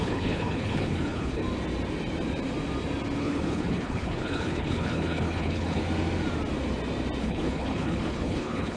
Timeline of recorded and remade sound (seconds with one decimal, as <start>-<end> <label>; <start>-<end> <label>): 0.0-1.4 remade; 1.4-3.2 recorded; 3.2-5.8 remade; 5.8-7.2 recorded; 7.2-8.8 remade